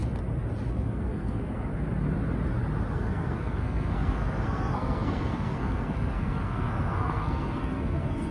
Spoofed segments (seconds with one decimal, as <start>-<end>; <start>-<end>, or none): 0.7-1.7; 2.9-8.3